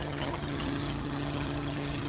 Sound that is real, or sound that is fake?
fake